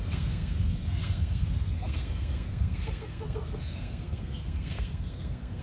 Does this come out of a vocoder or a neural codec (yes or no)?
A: yes